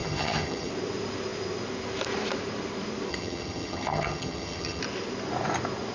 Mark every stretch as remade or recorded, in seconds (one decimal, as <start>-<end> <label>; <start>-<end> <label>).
0.0-0.7 remade; 0.7-3.1 recorded; 3.1-4.8 remade; 4.8-5.9 recorded